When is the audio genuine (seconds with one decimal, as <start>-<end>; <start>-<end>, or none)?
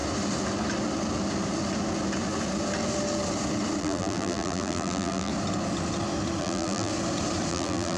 0.0-3.8; 5.3-6.4; 6.9-7.5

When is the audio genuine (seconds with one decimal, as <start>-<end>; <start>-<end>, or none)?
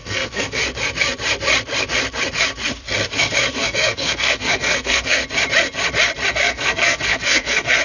0.6-3.6; 5.2-6.3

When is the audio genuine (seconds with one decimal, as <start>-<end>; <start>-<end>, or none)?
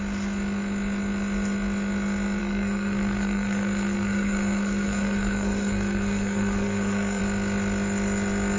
0.0-2.4; 7.2-8.6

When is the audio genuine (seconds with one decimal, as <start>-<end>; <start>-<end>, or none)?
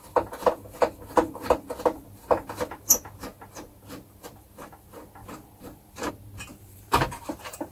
0.0-5.2; 6.1-6.5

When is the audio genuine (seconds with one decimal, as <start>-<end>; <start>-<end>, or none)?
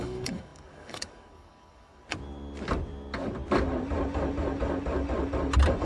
2.0-5.8